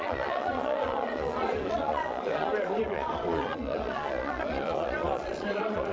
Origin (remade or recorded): remade